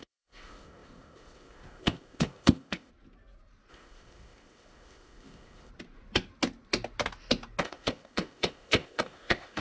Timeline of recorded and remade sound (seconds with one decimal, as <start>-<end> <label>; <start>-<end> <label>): 0.0-2.9 remade; 2.9-3.7 recorded; 3.7-5.7 remade; 5.7-7.6 recorded; 7.6-9.6 remade